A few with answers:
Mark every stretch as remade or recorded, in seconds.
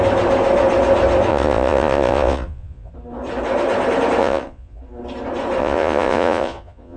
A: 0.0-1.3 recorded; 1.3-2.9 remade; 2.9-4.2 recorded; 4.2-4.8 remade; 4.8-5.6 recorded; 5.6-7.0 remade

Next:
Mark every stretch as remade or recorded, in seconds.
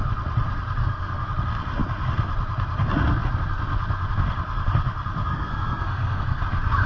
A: 0.0-0.8 recorded; 0.8-1.3 remade; 1.3-5.3 recorded; 5.3-6.4 remade; 6.4-6.9 recorded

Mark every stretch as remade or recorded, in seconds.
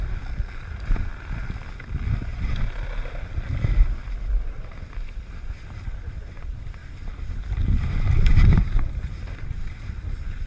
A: 0.0-10.5 recorded